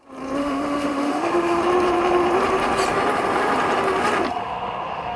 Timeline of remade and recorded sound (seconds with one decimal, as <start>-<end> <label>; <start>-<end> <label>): 0.0-0.4 recorded; 0.4-1.6 remade; 1.6-4.4 recorded; 4.4-5.2 remade